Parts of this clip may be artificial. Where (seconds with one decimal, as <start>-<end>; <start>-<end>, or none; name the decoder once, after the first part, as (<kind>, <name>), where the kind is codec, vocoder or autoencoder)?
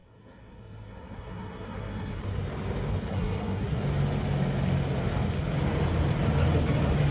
0.0-2.2 (codec, SNAC); 3.1-3.8